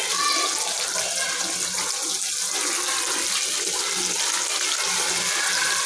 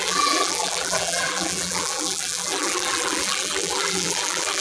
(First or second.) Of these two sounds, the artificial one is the second